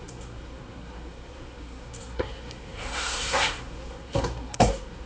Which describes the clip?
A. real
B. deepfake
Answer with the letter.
B